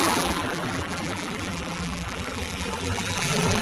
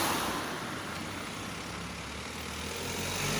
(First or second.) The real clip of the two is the second